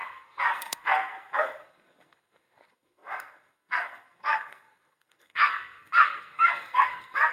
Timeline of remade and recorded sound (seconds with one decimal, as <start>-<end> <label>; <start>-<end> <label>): 0.0-7.3 remade